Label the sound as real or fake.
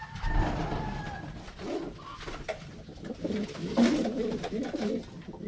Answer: real